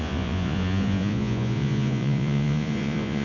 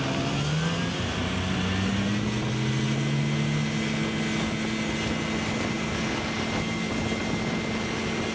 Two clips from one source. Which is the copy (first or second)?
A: first